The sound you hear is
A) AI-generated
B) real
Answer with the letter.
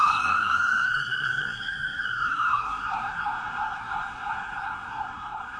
A